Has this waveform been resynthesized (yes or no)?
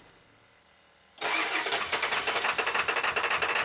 no